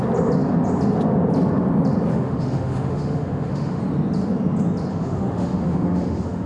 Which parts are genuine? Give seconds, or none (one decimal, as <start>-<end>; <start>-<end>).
0.0-2.1; 3.8-4.9